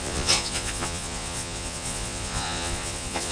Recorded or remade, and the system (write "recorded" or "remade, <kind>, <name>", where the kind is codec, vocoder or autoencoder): remade, vocoder, Vocos